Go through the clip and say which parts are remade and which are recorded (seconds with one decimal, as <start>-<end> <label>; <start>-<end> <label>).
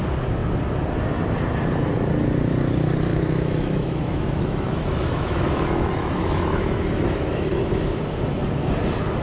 0.0-3.1 recorded; 3.1-7.6 remade; 7.6-9.2 recorded